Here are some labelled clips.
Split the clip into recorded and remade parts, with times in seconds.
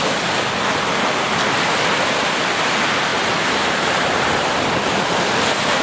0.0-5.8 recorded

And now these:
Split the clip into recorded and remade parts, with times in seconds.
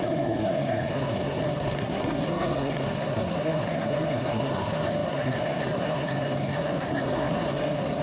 0.0-8.0 remade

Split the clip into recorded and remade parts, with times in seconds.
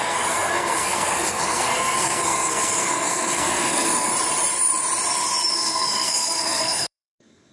0.0-4.1 remade; 4.1-5.5 recorded; 5.5-7.5 remade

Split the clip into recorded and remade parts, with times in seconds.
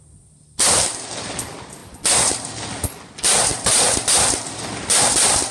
0.0-5.5 recorded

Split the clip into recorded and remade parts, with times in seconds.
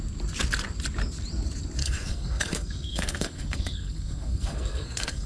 0.0-1.8 recorded; 1.8-5.3 remade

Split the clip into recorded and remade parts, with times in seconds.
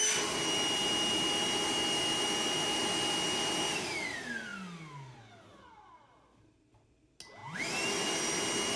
0.0-8.8 recorded